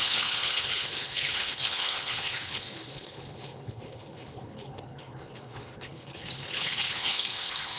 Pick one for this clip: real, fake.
fake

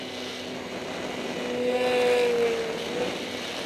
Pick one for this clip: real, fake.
real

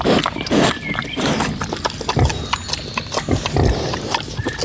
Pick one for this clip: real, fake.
fake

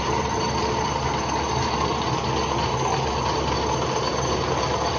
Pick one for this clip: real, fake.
real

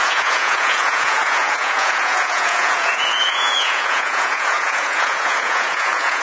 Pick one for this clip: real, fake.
fake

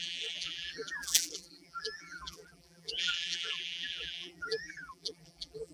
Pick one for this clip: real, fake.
fake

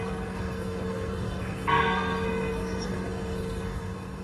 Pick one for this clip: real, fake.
fake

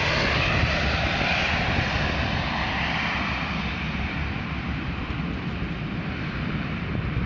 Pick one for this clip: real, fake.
real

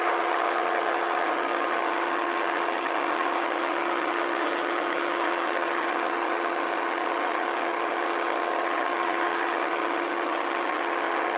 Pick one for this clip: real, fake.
fake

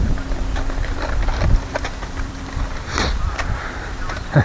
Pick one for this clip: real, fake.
fake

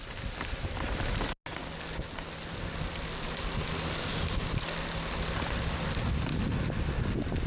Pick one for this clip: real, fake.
real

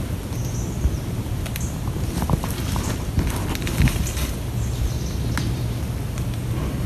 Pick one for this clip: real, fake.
real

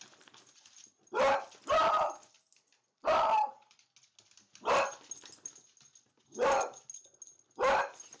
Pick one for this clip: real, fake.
real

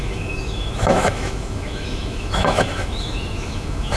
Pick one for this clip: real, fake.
fake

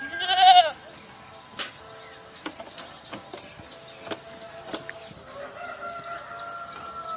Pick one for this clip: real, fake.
real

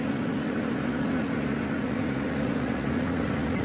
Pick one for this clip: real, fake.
fake